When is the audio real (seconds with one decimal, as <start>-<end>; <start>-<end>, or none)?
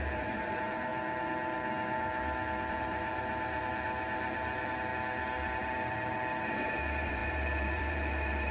0.9-2.7; 4.9-5.6